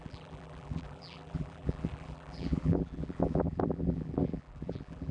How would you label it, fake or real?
fake